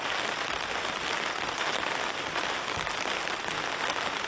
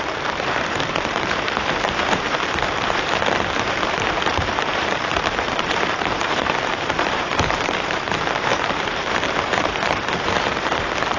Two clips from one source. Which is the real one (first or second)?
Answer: first